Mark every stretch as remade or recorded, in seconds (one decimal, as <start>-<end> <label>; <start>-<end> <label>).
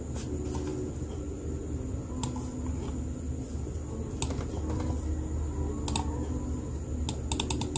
0.0-7.8 recorded